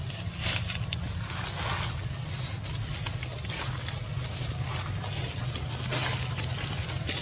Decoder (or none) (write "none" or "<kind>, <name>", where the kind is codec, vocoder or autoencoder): none